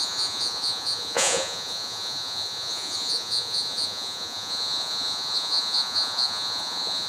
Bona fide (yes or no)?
no